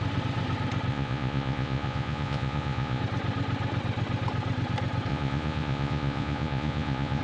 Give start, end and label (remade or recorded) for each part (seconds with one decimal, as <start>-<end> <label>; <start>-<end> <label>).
0.0-0.9 recorded; 0.9-3.0 remade; 3.0-5.1 recorded; 5.1-7.2 remade